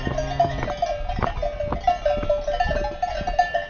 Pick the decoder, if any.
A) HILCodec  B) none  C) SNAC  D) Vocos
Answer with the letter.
B